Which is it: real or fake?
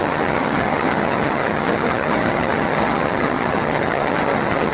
fake